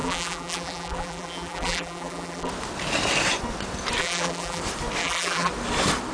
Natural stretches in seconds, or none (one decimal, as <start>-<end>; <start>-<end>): 2.5-4.0; 4.6-5.0; 5.5-6.1